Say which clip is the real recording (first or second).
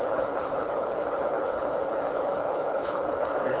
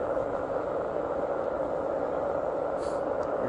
second